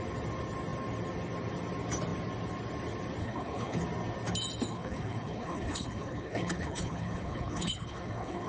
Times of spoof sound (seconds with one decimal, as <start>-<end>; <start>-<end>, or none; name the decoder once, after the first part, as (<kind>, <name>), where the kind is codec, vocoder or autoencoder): 3.2-3.8 (codec, HILCodec); 4.7-8.5